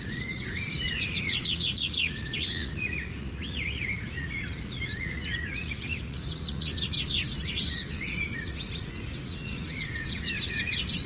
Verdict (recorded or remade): remade